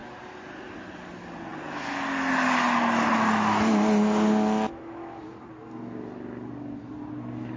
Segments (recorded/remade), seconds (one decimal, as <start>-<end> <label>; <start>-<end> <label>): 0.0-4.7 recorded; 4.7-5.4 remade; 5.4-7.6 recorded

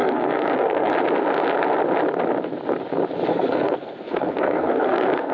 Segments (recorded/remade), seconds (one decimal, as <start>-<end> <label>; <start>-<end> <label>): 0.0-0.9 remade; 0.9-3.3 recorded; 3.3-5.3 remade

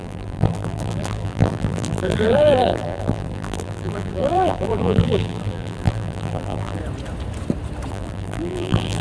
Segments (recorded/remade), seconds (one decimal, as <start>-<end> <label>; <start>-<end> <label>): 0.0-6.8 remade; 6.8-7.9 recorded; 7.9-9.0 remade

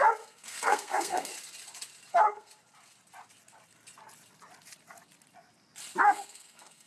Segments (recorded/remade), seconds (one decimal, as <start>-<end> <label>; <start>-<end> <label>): 0.0-1.3 remade; 1.3-2.1 recorded; 2.1-2.5 remade; 2.5-6.0 recorded; 6.0-6.9 remade